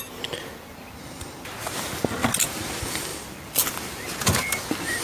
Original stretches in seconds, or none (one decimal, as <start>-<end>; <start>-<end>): 0.0-5.0